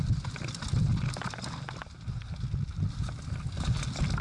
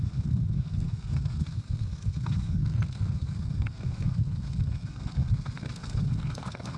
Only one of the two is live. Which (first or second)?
first